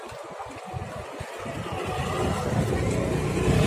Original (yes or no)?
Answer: yes